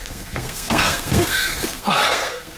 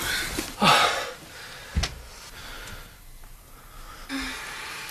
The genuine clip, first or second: second